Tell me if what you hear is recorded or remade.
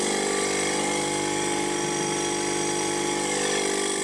remade